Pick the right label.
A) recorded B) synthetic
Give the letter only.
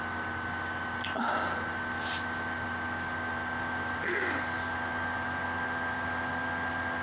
A